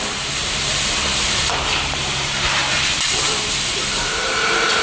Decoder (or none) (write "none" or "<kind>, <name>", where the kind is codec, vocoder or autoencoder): vocoder, BigVGAN v2